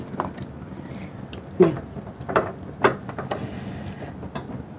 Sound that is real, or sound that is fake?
real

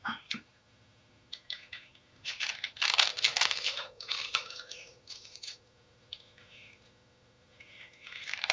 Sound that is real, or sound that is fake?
fake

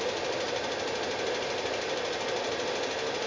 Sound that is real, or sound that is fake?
real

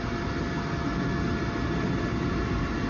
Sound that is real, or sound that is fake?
real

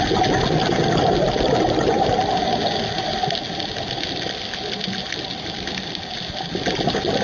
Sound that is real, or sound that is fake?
real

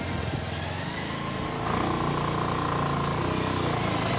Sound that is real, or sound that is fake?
real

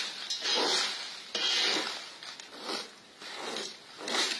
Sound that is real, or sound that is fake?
real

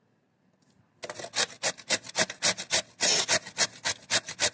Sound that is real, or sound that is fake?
real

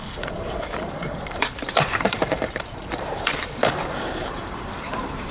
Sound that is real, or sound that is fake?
fake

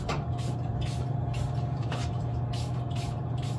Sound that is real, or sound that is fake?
fake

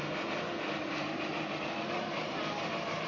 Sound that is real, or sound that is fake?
real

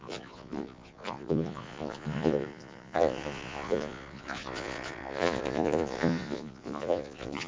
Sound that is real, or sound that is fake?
fake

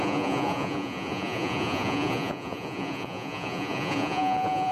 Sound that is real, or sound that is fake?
fake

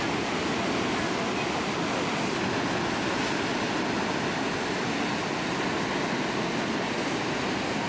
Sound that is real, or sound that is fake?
real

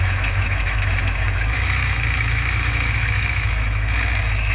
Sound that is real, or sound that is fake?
fake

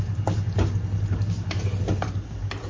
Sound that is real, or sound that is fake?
real